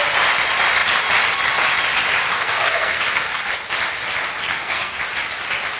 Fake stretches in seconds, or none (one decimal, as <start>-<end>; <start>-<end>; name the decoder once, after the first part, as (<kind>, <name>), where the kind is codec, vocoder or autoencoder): 2.3-3.5 (codec, SNAC); 4.5-5.0